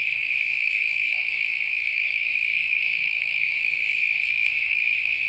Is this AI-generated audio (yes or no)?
yes